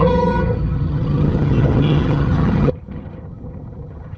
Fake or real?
fake